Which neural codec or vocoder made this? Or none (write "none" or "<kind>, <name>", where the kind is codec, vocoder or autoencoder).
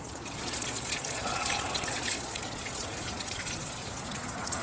vocoder, Vocos